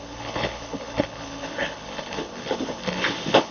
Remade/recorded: remade